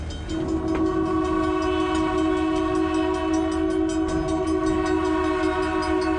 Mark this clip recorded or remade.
recorded